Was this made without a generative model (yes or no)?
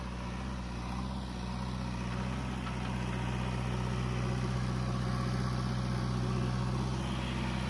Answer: yes